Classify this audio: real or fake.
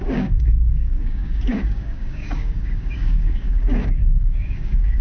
fake